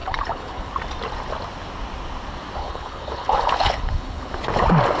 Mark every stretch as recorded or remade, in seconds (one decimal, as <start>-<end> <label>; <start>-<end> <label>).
0.0-0.7 remade; 0.7-2.6 recorded; 2.6-4.3 remade; 4.3-5.0 recorded